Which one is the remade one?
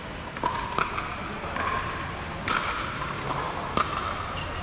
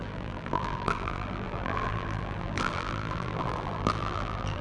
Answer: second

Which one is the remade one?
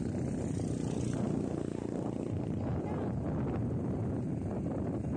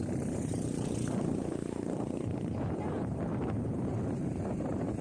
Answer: second